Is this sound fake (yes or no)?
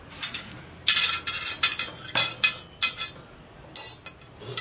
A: no